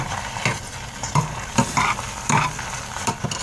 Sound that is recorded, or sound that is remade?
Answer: recorded